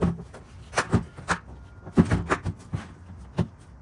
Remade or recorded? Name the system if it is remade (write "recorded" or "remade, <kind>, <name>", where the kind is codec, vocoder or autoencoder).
recorded